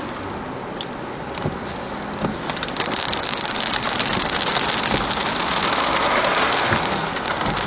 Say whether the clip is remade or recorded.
recorded